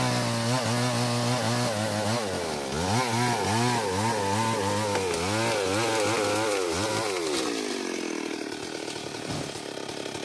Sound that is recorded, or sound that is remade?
recorded